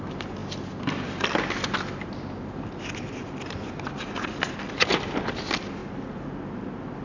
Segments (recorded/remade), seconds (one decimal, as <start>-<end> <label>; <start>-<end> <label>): 0.0-7.0 recorded